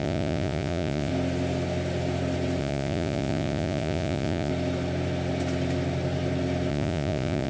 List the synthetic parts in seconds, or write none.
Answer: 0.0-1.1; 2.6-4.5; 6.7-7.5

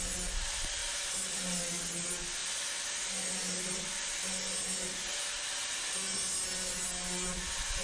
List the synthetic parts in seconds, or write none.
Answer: none